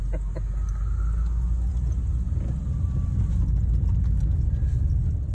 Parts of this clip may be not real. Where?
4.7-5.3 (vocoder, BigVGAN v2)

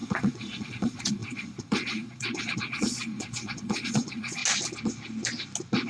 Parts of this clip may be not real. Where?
0.0-4.4 (vocoder, Vocos)

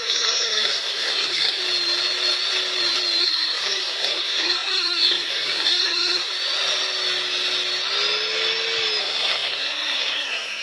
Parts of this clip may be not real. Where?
0.0-1.6 (codec, SNAC); 3.2-6.3; 9.0-10.6

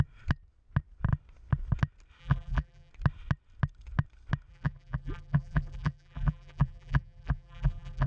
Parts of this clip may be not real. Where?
2.2-2.9 (vocoder, BigVGAN v2); 4.5-8.1

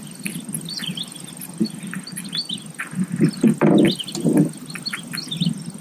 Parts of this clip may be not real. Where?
none

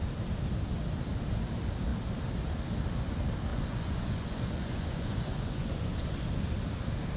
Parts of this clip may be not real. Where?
3.5-6.2 (vocoder, Vocos)

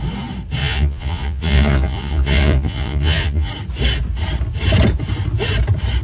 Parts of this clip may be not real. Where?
0.6-3.5 (vocoder, Vocos)